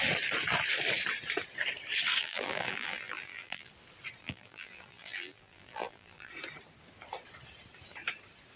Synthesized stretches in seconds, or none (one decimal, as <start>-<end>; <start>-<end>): 2.2-3.7; 4.2-6.3